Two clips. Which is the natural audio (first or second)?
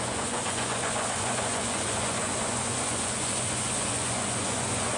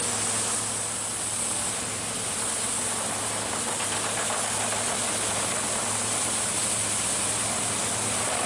second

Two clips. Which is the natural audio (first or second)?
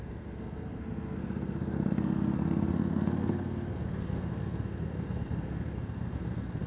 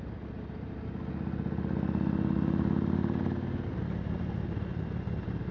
second